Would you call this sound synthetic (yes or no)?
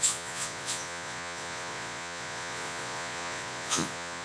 yes